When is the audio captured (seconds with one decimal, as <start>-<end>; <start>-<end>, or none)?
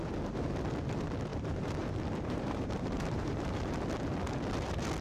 0.0-1.3; 3.7-5.0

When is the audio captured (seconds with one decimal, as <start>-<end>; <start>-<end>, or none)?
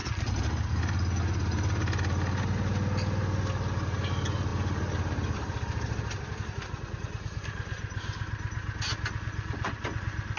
0.0-4.5; 6.6-10.4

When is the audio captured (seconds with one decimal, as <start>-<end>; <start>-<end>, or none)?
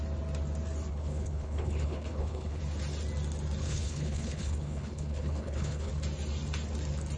0.0-0.9; 2.6-3.6; 5.9-7.2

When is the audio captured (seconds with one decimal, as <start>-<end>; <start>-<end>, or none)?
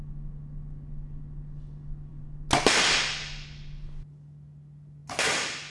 0.0-5.7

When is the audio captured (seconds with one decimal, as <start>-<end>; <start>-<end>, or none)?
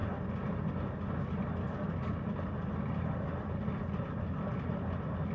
0.0-5.3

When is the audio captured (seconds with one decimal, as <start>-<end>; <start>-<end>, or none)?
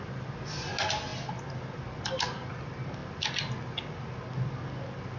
0.0-5.2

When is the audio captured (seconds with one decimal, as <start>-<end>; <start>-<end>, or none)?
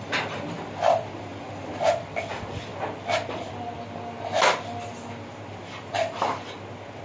0.0-7.0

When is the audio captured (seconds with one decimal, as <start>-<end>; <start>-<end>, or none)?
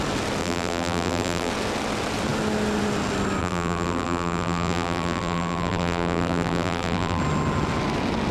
0.0-0.4; 1.5-3.4; 7.2-8.3